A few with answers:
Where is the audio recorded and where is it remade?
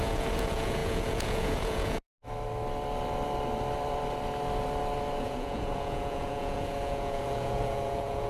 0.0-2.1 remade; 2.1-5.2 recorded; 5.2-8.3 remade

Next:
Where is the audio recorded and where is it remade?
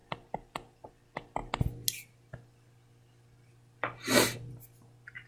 0.0-5.3 recorded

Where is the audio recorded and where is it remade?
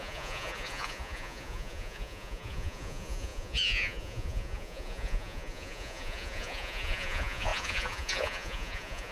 0.0-9.1 remade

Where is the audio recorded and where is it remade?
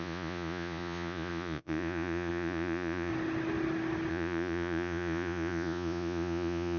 0.0-3.1 remade; 3.1-4.1 recorded; 4.1-6.8 remade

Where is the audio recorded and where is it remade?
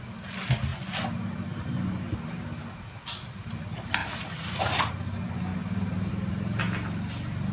0.0-4.0 recorded; 4.0-4.9 remade; 4.9-7.5 recorded